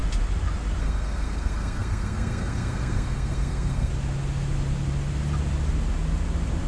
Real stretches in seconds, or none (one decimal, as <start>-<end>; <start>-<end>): 0.0-0.8; 3.9-6.7

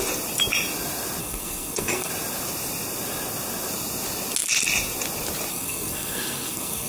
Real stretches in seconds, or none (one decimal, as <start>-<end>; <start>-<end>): 0.0-1.2; 2.1-5.5